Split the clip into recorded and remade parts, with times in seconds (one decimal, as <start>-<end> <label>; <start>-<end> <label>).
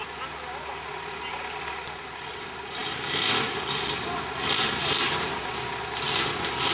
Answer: 0.0-6.7 recorded